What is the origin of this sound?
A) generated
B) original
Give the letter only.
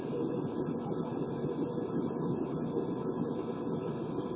B